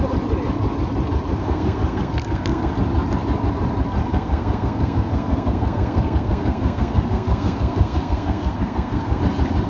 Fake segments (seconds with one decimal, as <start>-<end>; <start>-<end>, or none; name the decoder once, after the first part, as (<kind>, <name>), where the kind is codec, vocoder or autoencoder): 1.4-2.7 (codec, SNAC); 4.0-9.2